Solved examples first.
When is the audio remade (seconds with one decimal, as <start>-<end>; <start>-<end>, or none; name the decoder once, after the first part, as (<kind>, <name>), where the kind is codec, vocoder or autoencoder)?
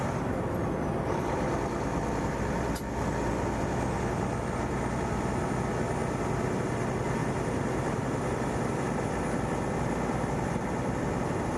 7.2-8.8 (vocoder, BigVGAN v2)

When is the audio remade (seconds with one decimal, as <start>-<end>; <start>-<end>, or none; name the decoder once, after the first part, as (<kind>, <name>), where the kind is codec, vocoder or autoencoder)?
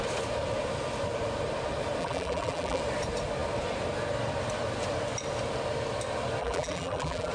2.0-2.8 (vocoder, BigVGAN v2); 6.4-7.3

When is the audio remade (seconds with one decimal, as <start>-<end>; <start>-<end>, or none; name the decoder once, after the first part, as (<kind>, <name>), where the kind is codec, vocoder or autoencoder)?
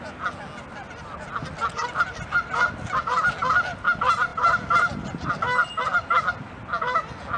0.8-2.5 (vocoder, BigVGAN v2)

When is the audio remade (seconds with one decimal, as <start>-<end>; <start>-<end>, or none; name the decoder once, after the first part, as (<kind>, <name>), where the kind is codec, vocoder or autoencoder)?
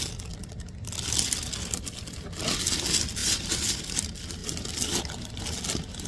3.2-3.8 (vocoder, BigVGAN v2); 4.4-5.0